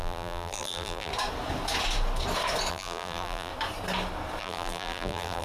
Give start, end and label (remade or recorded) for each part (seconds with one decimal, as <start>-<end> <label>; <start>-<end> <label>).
0.0-1.1 remade; 1.1-2.7 recorded; 2.7-3.5 remade; 3.5-4.4 recorded; 4.4-5.4 remade